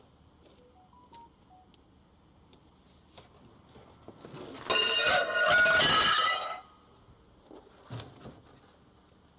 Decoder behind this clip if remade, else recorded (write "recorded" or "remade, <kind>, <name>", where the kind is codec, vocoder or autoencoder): recorded